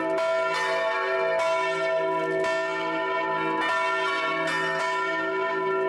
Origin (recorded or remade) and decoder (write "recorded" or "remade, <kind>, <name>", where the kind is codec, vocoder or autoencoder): recorded